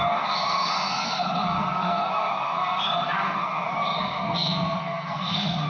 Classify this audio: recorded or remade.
remade